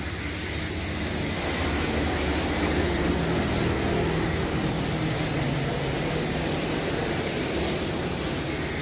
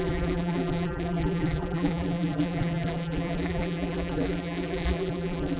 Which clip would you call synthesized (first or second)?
second